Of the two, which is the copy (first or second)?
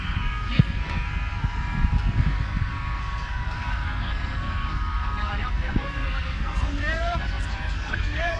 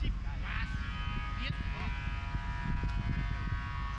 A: first